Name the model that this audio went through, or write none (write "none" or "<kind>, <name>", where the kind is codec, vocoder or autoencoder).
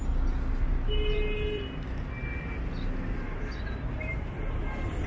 none